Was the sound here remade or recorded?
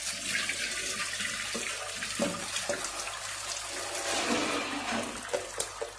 recorded